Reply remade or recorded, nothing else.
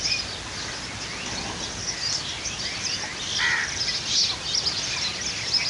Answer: recorded